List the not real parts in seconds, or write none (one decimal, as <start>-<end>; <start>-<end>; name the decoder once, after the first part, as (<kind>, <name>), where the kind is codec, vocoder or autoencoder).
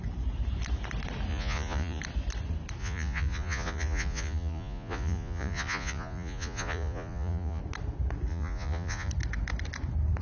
1.3-2.0 (vocoder, Vocos); 2.8-7.6; 8.3-9.1